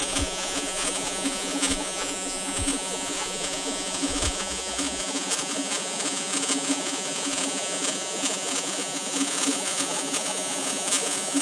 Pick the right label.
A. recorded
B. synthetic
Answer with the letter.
B